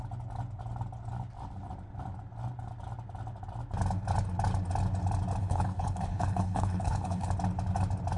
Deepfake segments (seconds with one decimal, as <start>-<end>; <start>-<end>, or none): 5.4-7.3